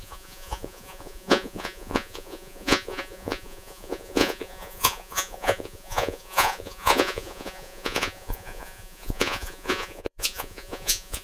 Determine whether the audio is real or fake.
fake